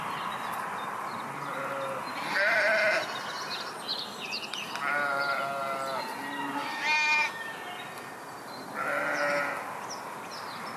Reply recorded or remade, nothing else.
recorded